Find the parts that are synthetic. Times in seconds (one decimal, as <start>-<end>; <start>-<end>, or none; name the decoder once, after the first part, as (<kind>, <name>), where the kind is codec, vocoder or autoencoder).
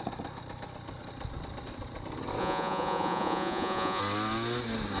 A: 2.4-4.0 (vocoder, Vocos)